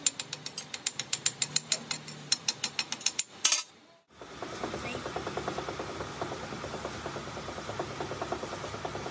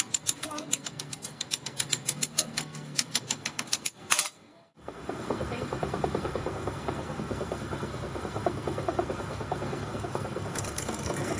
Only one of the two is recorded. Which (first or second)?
first